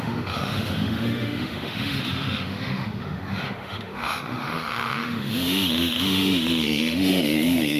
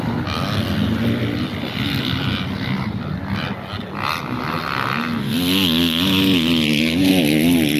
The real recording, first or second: second